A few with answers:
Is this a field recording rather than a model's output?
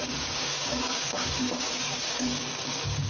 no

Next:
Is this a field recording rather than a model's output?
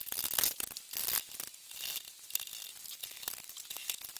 yes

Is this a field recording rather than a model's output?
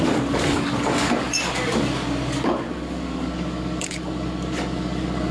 no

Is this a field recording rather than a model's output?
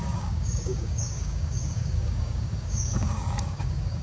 no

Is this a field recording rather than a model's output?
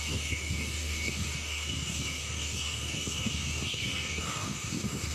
no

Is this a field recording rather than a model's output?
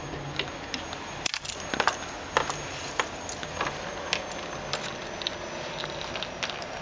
yes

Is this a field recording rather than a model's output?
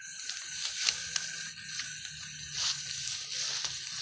yes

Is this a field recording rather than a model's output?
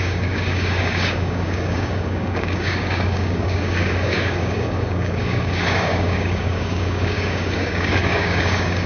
no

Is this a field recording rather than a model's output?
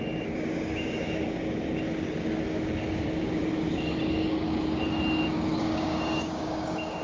no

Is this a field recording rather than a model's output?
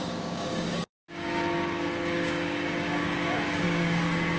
no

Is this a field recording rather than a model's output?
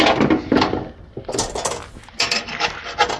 yes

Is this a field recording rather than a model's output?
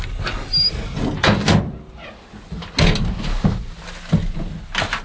yes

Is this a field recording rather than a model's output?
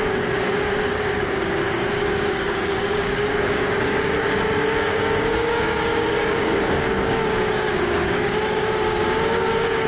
no